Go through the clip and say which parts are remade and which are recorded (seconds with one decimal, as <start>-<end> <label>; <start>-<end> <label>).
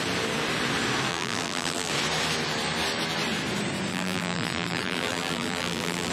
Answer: 0.0-1.1 recorded; 1.1-1.9 remade; 1.9-3.9 recorded; 3.9-6.1 remade